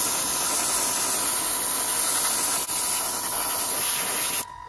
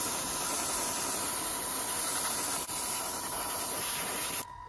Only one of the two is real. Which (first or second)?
first